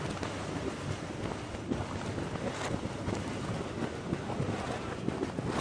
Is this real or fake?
real